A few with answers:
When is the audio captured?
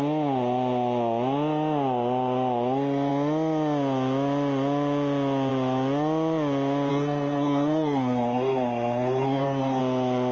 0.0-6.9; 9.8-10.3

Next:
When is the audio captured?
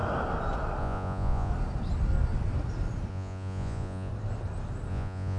0.0-0.8; 1.5-3.1; 4.1-4.9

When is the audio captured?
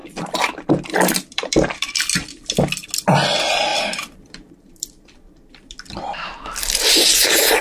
2.9-3.7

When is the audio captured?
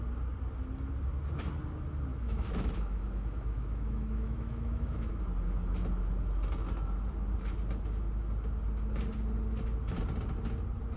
0.0-2.1; 5.1-11.0